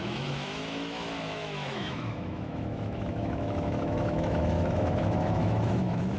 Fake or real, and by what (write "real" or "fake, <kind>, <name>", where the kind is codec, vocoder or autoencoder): fake, autoencoder, DAC-VAE